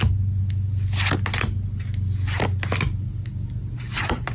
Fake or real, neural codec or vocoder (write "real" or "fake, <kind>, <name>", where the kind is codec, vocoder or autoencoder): real